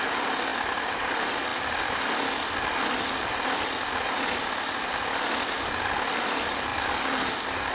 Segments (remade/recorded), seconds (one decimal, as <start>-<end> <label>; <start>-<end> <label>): 0.0-7.7 recorded